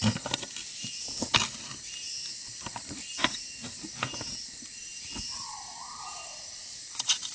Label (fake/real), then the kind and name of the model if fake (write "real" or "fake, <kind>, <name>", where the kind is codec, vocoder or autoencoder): real